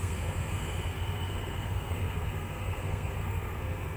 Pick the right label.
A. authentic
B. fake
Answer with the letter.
B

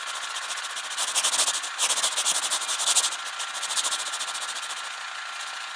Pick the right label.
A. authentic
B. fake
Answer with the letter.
A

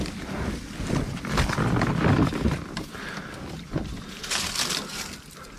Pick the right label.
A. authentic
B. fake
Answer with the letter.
A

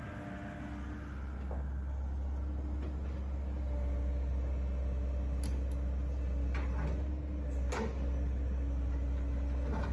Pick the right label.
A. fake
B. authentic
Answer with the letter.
B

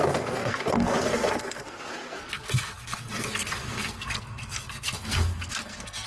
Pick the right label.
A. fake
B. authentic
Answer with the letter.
A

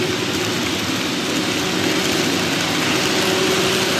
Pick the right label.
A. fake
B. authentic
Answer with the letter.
B